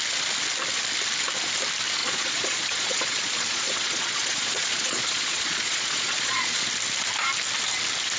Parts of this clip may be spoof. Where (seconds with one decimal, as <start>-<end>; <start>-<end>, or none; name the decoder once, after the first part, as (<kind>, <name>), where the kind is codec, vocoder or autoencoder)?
2.0-6.7 (vocoder, Vocos)

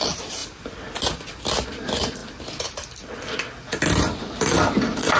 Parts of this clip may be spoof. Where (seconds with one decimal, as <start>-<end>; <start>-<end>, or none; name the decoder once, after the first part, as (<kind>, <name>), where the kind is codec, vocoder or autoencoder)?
none

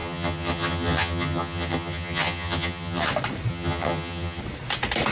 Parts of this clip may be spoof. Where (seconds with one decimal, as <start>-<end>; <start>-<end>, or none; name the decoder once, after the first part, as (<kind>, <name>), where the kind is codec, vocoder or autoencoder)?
0.0-3.1 (vocoder, HiFi-GAN); 3.5-4.4

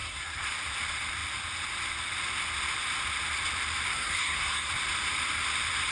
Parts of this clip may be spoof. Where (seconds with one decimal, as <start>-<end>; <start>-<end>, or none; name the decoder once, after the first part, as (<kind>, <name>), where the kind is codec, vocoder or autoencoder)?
0.0-0.5 (codec, SNAC); 3.9-4.7